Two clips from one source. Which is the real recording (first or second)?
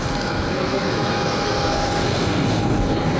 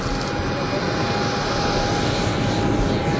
second